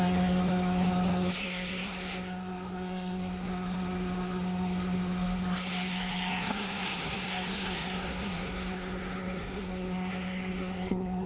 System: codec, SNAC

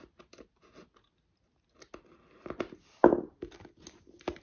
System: none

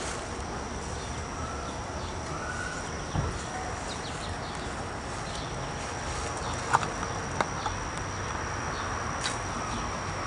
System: none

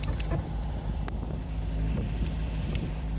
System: vocoder, BigVGAN v2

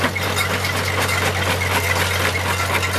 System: none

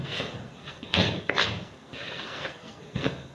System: codec, SNAC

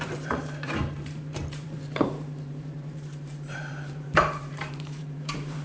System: vocoder, BigVGAN v2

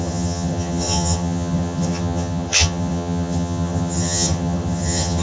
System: vocoder, HiFi-GAN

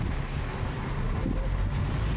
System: none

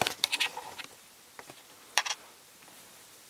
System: vocoder, BigVGAN v2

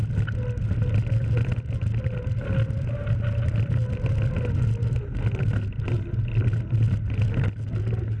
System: none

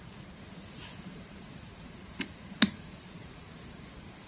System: vocoder, Vocos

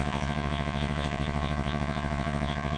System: vocoder, Vocos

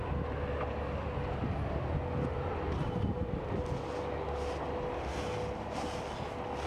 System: none